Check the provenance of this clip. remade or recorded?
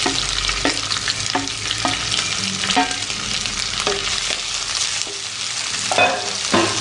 recorded